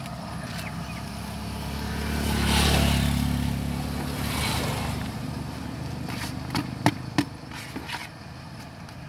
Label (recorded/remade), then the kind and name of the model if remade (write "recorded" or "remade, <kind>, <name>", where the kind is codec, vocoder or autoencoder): recorded